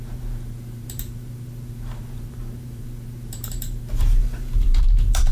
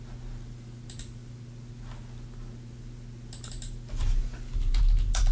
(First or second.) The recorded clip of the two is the second